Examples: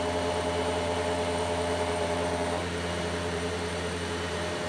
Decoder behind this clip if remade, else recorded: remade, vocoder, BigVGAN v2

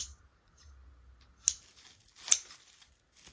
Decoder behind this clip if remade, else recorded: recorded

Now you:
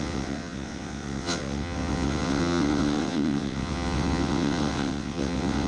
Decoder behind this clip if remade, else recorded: remade, vocoder, WaveNeXt